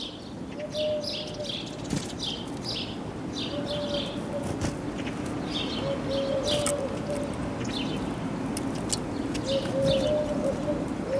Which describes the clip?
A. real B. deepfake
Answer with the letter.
A